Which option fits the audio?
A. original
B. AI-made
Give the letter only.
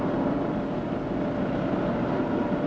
A